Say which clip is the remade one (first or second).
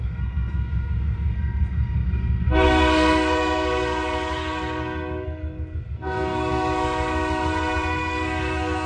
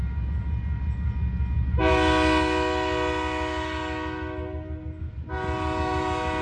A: first